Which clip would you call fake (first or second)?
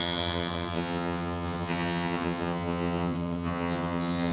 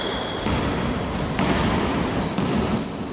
first